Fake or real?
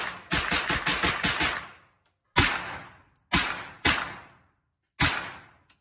real